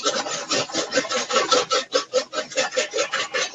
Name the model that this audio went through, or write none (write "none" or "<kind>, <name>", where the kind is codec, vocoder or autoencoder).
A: none